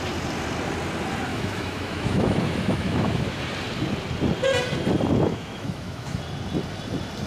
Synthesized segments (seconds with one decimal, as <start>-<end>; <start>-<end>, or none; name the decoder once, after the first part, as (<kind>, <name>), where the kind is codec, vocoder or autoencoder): 1.3-3.4 (autoencoder, DAC-VAE); 5.3-6.2